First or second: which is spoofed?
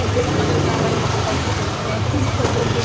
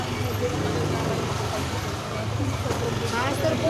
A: first